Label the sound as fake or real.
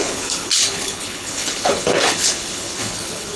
fake